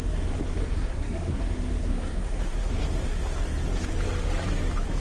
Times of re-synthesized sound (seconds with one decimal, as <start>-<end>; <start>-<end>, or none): 0.6-1.4; 1.9-3.4